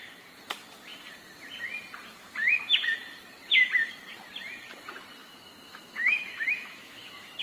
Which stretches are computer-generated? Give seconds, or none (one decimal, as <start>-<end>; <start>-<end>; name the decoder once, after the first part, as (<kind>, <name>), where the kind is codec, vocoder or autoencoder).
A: 5.2-7.4 (autoencoder, DAC-VAE)